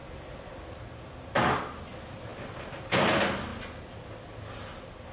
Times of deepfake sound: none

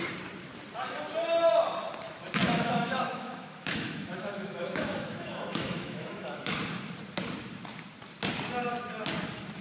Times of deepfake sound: 2.4-6.5

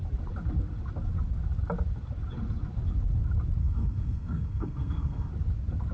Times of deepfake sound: 3.6-5.3

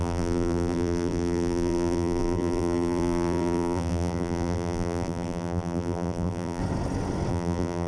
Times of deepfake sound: 0.0-6.6; 7.3-7.9

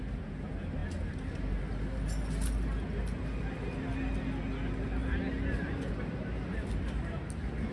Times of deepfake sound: none

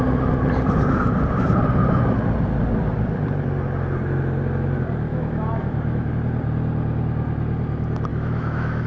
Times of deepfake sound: 5.1-6.1; 8.1-8.9

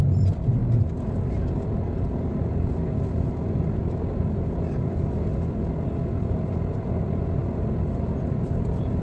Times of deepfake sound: 0.0-0.6; 5.7-9.0

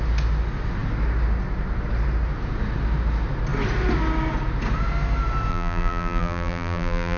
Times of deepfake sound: 5.5-7.2